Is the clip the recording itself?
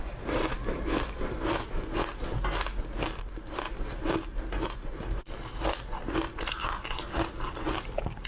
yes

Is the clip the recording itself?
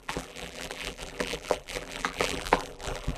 no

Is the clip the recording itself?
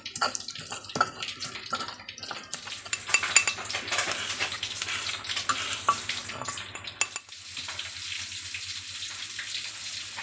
yes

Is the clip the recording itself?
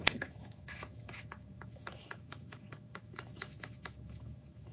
no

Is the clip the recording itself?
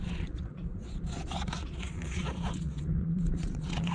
no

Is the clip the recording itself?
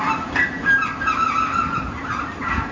yes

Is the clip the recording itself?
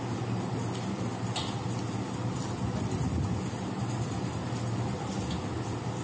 yes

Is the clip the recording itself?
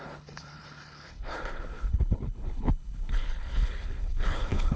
no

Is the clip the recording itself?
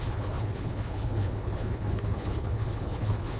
no